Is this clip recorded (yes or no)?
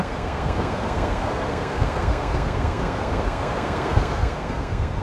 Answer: no